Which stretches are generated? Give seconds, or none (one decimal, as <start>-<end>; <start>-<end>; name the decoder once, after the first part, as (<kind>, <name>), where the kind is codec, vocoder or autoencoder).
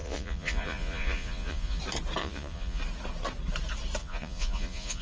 0.0-1.8 (vocoder, Vocos); 2.2-2.8; 4.0-5.0